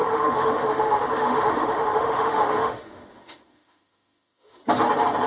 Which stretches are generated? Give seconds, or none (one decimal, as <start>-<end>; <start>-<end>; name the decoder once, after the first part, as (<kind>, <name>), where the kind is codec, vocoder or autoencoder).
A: 0.0-4.6 (autoencoder, DAC-VAE)